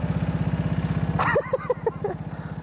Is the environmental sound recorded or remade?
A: recorded